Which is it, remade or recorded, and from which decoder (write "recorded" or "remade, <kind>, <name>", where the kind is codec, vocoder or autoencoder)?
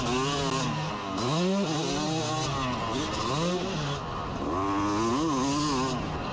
recorded